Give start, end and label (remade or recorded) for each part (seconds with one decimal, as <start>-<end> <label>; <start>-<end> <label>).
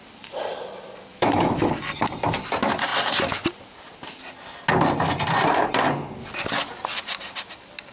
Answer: 0.0-1.1 recorded; 1.1-1.7 remade; 1.7-7.9 recorded